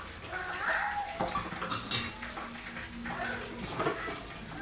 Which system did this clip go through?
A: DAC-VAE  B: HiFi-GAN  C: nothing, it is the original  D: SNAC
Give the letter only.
C